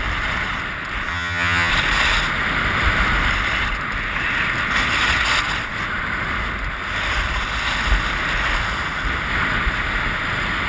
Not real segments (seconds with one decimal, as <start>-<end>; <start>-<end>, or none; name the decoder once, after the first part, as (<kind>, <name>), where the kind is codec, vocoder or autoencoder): 1.1-1.7 (vocoder, HiFi-GAN)